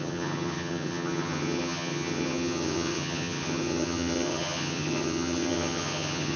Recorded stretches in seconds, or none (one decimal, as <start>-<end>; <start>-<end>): none

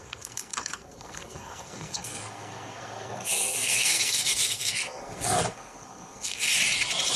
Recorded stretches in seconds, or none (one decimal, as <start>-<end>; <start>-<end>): 6.5-7.2

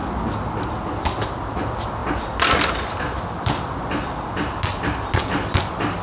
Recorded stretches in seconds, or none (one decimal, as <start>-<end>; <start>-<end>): 0.0-6.0